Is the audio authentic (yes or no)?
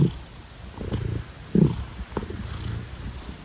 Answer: yes